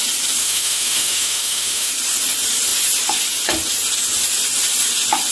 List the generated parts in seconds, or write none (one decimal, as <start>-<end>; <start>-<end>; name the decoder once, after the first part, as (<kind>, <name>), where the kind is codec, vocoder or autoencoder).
0.4-1.9 (autoencoder, DAC-VAE)